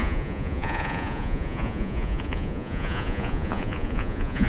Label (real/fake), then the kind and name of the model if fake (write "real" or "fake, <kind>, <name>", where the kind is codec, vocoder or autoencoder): fake, vocoder, Vocos